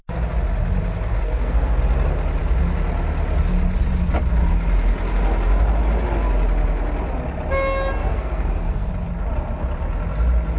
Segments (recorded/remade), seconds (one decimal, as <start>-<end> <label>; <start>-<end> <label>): 0.0-1.1 recorded; 1.1-1.8 remade; 1.8-8.0 recorded; 8.0-8.9 remade; 8.9-10.6 recorded